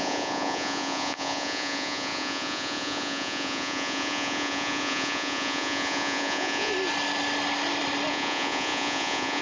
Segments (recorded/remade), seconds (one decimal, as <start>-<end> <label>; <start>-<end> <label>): 0.0-6.7 remade; 6.7-8.1 recorded; 8.1-9.4 remade